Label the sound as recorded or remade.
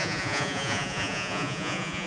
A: remade